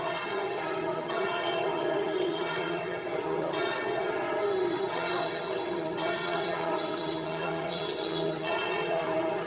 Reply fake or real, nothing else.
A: fake